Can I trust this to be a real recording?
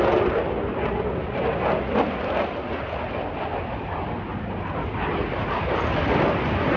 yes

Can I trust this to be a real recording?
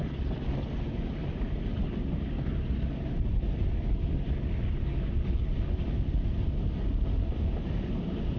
yes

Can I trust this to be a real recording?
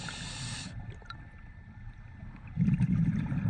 yes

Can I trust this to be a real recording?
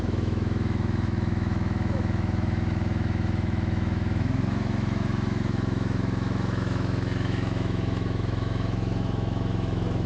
no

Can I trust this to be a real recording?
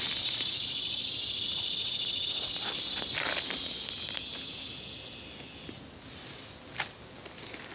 yes